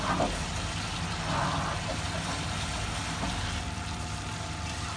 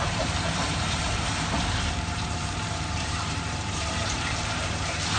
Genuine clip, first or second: first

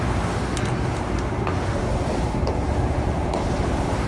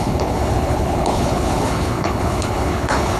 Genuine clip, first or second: first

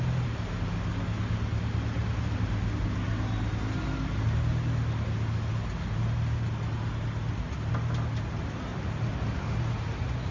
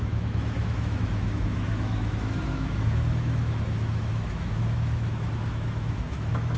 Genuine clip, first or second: first